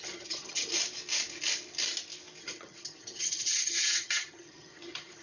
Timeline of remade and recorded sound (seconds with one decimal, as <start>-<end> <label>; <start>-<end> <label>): 0.0-0.7 remade; 0.7-2.4 recorded; 2.4-5.2 remade